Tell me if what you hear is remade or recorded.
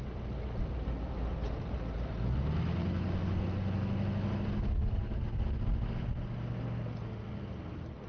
recorded